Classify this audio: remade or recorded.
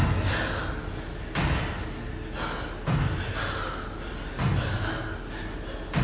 recorded